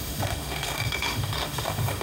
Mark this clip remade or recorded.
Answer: remade